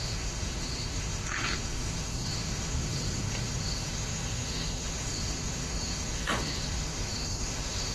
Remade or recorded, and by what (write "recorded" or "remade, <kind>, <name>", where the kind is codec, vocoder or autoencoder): remade, autoencoder, DAC-VAE